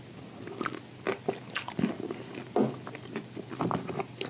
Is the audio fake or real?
real